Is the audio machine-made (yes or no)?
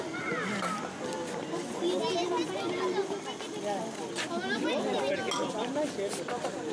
no